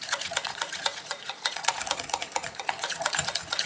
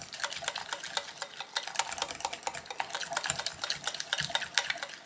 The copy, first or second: first